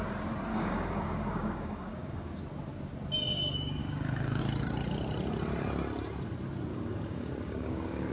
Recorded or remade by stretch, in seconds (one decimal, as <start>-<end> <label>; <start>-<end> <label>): 0.0-0.5 recorded; 0.5-2.4 remade; 2.4-3.8 recorded; 3.8-4.4 remade; 4.4-6.7 recorded; 6.7-8.1 remade